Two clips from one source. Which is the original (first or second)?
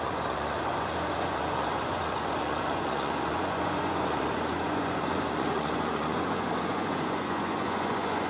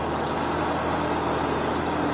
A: second